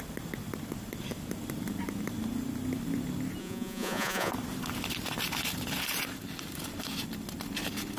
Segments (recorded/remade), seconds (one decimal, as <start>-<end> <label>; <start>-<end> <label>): 0.0-3.4 recorded; 3.4-4.3 remade; 4.3-8.0 recorded